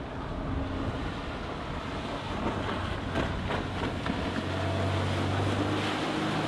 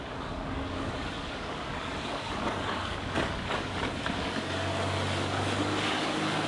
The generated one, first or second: second